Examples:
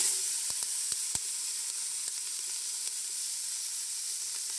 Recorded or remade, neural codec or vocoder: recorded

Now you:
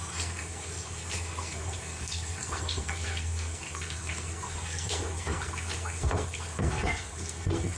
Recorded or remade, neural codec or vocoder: remade, codec, SNAC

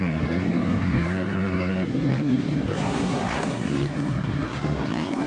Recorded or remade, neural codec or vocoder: remade, codec, SNAC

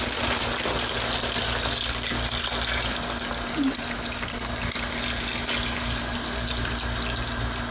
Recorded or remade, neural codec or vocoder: recorded